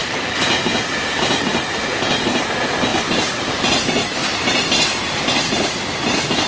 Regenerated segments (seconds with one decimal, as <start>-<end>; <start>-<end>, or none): 2.9-3.6; 4.2-6.0